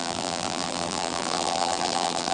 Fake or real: fake